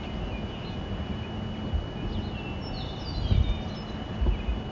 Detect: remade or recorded recorded